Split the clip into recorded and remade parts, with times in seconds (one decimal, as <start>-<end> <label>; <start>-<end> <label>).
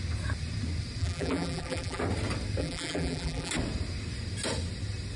0.0-1.0 recorded; 1.0-2.0 remade; 2.0-2.6 recorded; 2.6-3.5 remade; 3.5-5.2 recorded